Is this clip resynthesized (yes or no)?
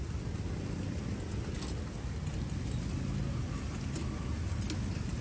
no